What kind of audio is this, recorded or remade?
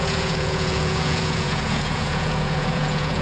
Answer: remade